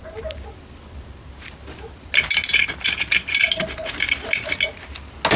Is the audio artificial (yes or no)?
no